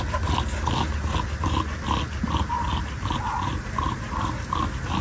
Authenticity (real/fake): real